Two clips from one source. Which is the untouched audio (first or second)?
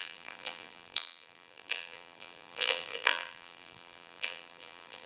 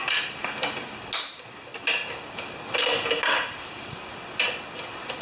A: second